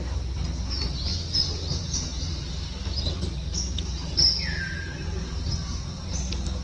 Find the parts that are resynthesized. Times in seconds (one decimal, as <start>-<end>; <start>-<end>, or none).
none